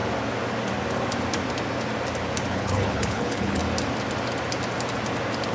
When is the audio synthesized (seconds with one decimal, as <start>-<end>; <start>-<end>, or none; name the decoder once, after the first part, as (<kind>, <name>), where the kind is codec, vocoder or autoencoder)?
2.5-3.6 (codec, HILCodec)